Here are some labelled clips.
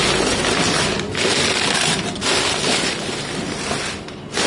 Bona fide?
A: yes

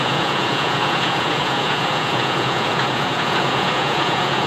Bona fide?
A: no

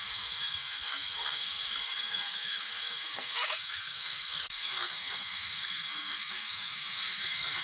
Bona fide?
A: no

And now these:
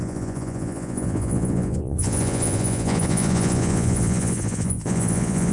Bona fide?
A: no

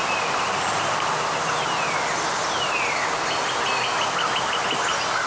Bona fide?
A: yes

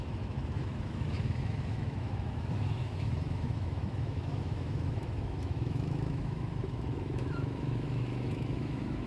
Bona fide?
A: no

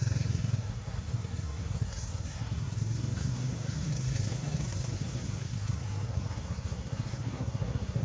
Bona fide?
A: no